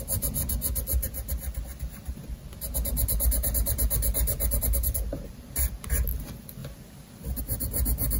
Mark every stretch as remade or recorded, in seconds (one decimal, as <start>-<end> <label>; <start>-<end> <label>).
0.0-8.2 recorded